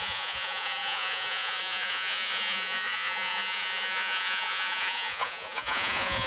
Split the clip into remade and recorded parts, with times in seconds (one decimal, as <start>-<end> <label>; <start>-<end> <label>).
0.0-6.3 remade